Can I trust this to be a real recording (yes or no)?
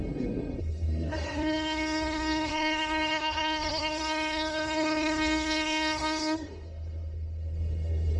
no